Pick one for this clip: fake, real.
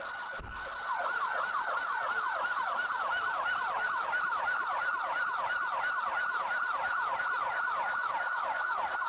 real